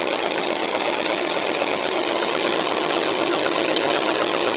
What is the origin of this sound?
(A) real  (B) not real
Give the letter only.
B